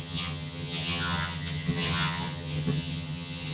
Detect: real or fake fake